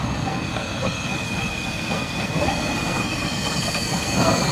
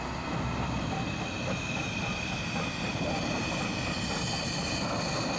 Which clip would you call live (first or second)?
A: second